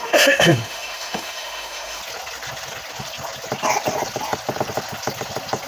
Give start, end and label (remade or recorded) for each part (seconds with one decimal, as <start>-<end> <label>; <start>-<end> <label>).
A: 0.0-2.0 remade; 2.0-5.7 recorded